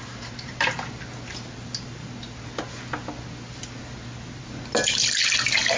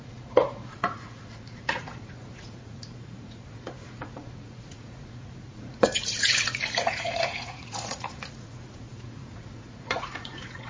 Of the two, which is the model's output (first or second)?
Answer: second